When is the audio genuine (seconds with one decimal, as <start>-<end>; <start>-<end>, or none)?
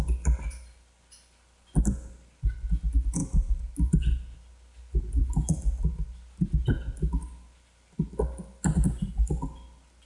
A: 0.0-10.1